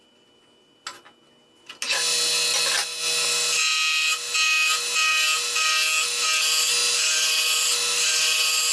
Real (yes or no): yes